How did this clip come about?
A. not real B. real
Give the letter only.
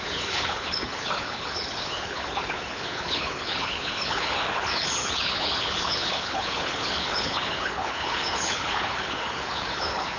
A